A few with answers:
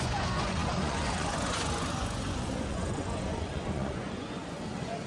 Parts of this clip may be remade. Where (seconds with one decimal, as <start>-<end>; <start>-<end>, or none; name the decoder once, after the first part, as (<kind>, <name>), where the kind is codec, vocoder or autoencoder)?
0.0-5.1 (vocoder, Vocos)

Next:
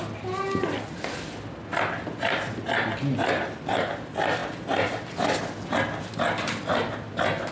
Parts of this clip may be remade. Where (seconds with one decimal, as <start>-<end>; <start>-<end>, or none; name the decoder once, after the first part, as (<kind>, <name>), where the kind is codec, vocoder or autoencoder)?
none

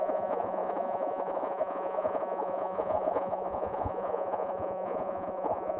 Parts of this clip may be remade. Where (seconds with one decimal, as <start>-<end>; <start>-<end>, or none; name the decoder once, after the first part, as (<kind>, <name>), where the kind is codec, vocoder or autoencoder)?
0.0-5.8 (vocoder, Vocos)

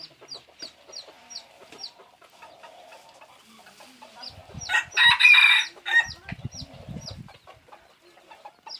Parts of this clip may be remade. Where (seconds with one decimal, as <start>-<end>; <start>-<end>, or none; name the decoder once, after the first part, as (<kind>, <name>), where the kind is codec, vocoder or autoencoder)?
none

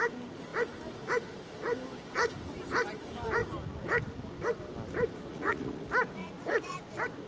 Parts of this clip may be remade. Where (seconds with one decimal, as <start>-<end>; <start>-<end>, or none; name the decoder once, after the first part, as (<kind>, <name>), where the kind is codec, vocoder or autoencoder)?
5.3-5.8 (vocoder, Vocos); 6.2-6.8